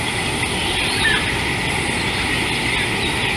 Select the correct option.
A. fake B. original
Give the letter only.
B